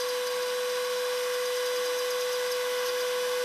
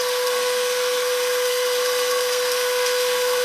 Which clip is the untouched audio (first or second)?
first